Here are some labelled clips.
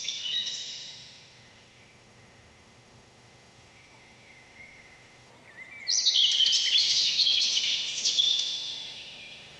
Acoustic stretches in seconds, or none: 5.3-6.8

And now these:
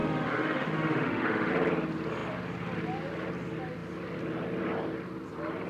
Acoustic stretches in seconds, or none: 1.5-5.7

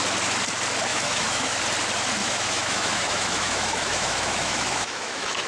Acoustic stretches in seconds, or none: 0.0-0.9; 1.6-2.2

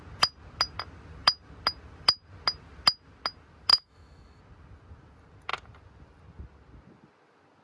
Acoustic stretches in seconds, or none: 0.0-3.7; 4.4-7.6

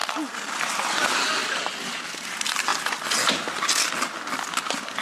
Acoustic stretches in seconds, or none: 0.0-5.0

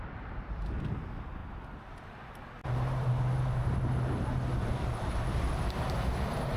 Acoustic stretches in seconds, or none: 0.0-6.6

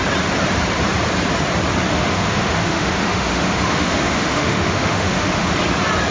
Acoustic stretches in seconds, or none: 0.0-1.9; 5.6-6.1

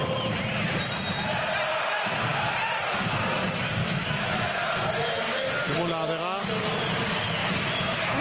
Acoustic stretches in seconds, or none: 0.0-3.8; 5.5-7.4